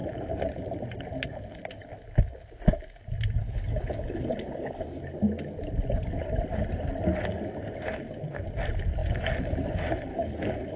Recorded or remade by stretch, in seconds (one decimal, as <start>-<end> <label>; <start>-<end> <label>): 0.0-3.4 recorded; 3.4-5.0 remade; 5.0-10.1 recorded; 10.1-10.8 remade